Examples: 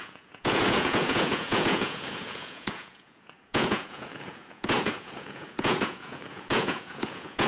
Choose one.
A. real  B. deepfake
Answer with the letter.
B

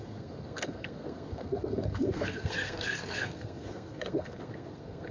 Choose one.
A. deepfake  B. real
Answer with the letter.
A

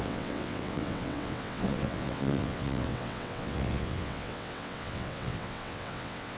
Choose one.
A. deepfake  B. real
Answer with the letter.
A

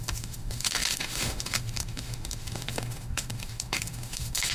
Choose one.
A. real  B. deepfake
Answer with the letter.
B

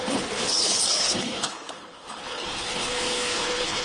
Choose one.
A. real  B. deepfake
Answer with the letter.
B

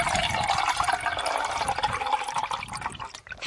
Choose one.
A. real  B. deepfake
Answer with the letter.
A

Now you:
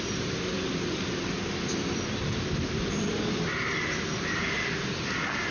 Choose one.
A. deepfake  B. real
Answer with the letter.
B